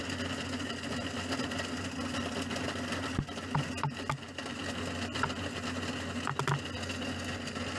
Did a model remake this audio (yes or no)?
no